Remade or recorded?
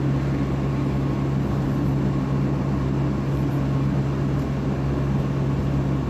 recorded